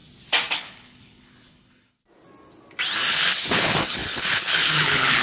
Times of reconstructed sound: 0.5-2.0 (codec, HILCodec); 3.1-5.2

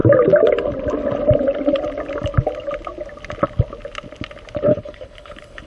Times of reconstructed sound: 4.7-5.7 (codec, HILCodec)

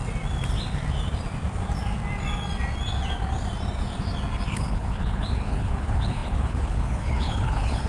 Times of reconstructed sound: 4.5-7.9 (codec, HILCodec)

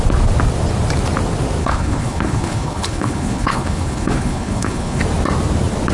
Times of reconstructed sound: 1.6-5.0 (codec, HILCodec)

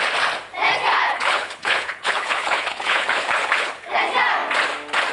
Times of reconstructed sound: 0.9-4.0 (codec, HILCodec)

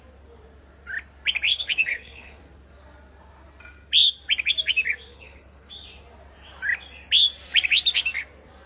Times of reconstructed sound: 1.5-2.4 (codec, HILCodec); 5.1-5.7

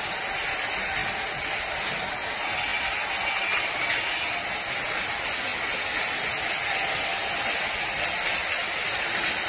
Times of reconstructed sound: none